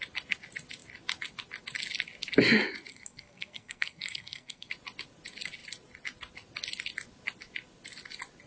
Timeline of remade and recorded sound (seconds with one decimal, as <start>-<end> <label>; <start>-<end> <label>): 0.0-2.9 recorded; 2.9-4.7 remade; 4.7-8.5 recorded